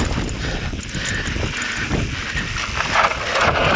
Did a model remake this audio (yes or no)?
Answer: no